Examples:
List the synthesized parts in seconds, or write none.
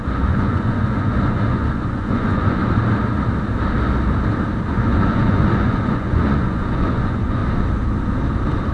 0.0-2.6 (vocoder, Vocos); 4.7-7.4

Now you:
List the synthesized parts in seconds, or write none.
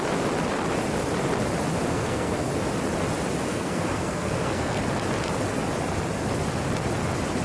1.9-2.5 (codec, SNAC); 3.5-4.8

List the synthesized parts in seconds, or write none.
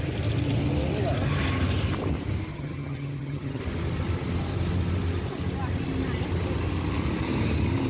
2.5-3.6 (vocoder, HiFi-GAN)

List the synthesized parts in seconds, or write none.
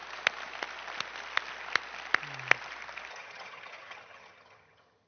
3.1-5.1 (vocoder, HiFi-GAN)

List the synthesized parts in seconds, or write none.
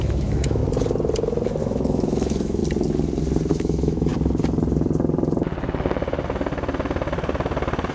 0.0-0.6 (autoencoder, DAC-VAE); 1.6-2.6; 3.5-4.1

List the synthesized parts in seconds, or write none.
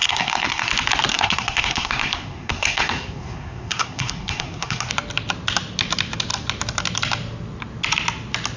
0.0-0.7 (codec, SNAC); 1.1-4.9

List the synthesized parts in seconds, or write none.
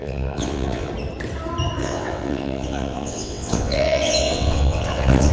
0.0-0.9 (vocoder, WaveNeXt); 1.8-5.3